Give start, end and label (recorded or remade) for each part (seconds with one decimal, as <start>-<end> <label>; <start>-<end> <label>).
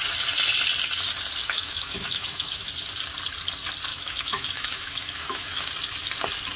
0.0-1.4 recorded; 1.4-2.7 remade; 2.7-3.9 recorded; 3.9-5.7 remade; 5.7-6.6 recorded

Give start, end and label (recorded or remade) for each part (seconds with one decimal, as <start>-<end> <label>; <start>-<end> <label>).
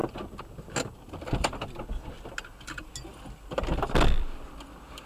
0.0-5.1 recorded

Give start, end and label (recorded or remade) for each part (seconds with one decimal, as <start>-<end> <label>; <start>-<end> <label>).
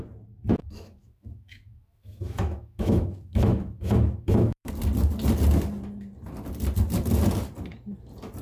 0.0-0.6 recorded; 0.6-4.7 remade; 4.7-8.4 recorded